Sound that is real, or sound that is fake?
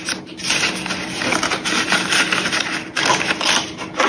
real